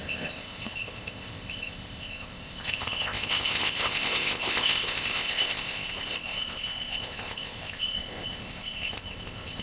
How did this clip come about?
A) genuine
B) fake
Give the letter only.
B